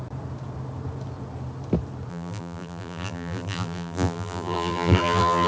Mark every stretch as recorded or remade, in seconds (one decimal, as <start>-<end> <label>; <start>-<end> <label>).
0.0-2.1 recorded; 2.1-5.5 remade